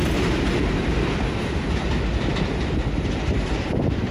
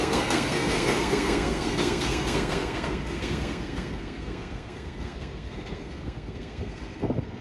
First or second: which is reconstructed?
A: second